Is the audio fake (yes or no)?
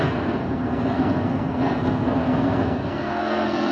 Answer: yes